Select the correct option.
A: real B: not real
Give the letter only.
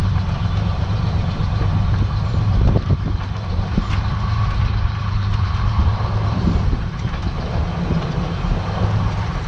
B